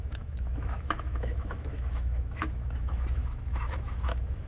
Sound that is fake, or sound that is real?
fake